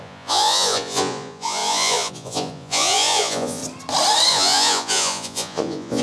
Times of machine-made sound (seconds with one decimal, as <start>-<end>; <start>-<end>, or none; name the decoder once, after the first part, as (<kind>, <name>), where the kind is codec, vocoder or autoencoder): 0.0-3.6 (vocoder, Vocos); 4.3-6.0